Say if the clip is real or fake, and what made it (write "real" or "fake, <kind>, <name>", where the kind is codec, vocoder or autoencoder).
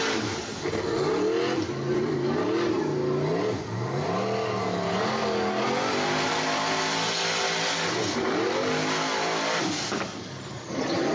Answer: real